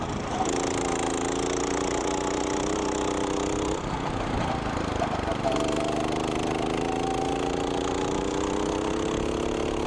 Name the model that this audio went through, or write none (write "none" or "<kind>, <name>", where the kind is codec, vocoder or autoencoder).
none